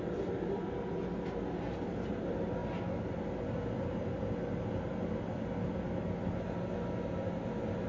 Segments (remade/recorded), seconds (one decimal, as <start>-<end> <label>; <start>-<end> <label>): 0.0-7.9 recorded